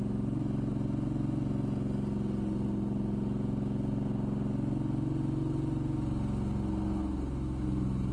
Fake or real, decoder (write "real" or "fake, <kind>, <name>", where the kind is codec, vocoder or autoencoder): real